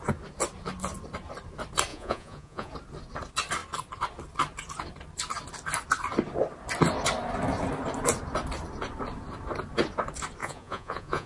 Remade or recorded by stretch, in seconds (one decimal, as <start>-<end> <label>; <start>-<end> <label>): 0.0-1.9 recorded; 1.9-2.7 remade; 2.7-10.4 recorded; 10.4-11.3 remade